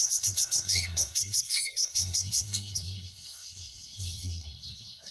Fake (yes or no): yes